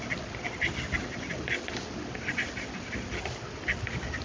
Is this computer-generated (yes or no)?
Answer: no